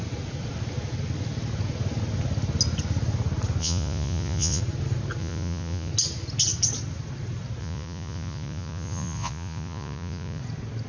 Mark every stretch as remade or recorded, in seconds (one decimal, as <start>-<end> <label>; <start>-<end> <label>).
0.0-3.6 recorded; 3.6-4.6 remade; 4.6-5.2 recorded; 5.2-5.9 remade; 5.9-7.6 recorded; 7.6-10.4 remade; 10.4-10.9 recorded